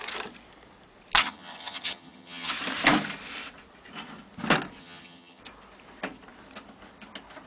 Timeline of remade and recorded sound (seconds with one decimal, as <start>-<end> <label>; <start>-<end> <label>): 0.0-1.2 recorded; 1.2-2.5 remade; 2.5-4.8 recorded; 4.8-5.4 remade; 5.4-7.5 recorded